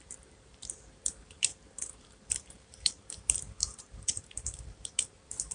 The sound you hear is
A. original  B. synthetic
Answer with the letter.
B